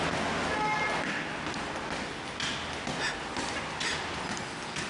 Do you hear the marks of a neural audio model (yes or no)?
no